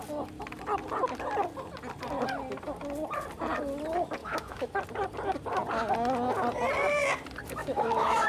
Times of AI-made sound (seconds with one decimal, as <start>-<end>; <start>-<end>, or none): 4.2-4.7; 7.6-8.3